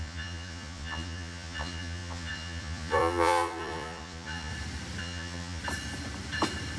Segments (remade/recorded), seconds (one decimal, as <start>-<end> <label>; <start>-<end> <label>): 0.0-4.5 remade; 4.5-5.0 recorded; 5.0-5.6 remade; 5.6-6.8 recorded